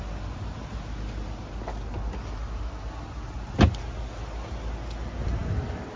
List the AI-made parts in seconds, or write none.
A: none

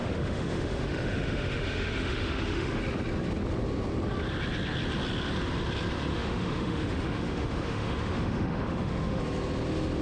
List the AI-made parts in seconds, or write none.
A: 0.0-2.8; 6.1-9.2

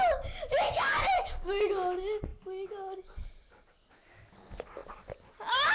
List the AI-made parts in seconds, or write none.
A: 0.5-1.7

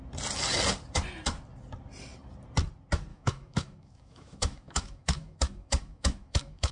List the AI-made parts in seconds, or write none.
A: 3.1-6.7

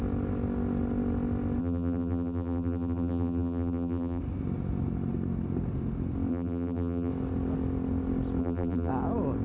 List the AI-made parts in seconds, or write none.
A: 1.6-4.2; 6.3-7.1; 8.4-8.9